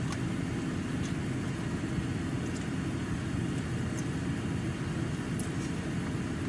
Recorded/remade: recorded